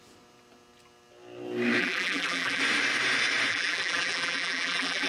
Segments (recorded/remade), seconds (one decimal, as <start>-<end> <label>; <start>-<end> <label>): 0.0-1.8 recorded; 1.8-2.6 remade; 2.6-3.5 recorded; 3.5-5.1 remade